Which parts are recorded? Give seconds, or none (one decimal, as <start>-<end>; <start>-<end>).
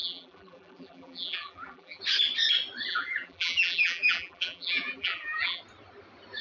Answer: 2.0-2.9; 5.6-6.4